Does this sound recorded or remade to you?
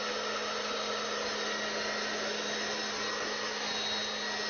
recorded